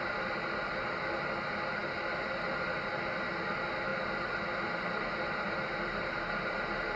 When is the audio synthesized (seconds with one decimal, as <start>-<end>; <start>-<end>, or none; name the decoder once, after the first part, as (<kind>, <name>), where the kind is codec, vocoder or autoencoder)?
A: none